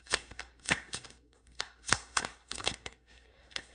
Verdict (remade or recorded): remade